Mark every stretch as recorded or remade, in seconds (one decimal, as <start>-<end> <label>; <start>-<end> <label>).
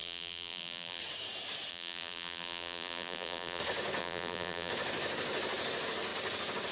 0.0-1.0 remade; 1.0-1.7 recorded; 1.7-3.6 remade; 3.6-4.0 recorded; 4.0-4.7 remade; 4.7-6.7 recorded